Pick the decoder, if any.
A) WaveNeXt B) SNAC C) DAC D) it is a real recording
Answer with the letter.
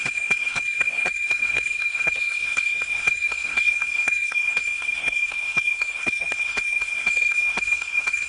B